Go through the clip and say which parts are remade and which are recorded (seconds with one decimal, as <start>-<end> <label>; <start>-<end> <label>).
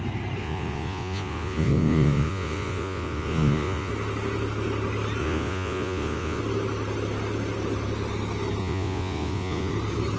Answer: 0.0-0.4 recorded; 0.4-3.9 remade; 3.9-5.2 recorded; 5.2-6.4 remade; 6.4-8.6 recorded; 8.6-9.7 remade; 9.7-10.2 recorded